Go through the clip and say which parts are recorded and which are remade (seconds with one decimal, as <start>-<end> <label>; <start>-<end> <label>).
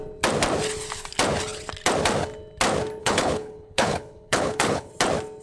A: 0.0-3.0 recorded; 3.0-4.9 remade; 4.9-5.4 recorded